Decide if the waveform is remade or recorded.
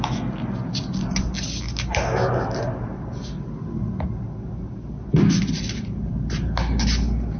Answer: recorded